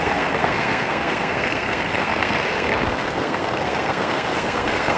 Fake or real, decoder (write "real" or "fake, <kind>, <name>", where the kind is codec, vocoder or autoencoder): fake, codec, SNAC